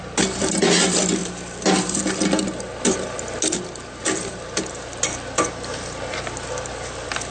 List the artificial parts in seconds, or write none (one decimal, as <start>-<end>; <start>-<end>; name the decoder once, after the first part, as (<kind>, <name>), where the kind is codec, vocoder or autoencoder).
none